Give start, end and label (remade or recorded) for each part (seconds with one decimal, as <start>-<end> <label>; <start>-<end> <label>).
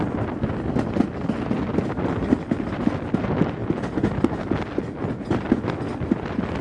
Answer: 0.0-6.6 recorded